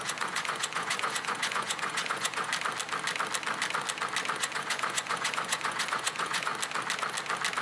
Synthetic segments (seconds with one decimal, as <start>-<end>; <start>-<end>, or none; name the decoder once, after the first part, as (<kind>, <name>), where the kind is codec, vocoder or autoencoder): 0.0-2.5 (vocoder, Vocos); 4.4-6.5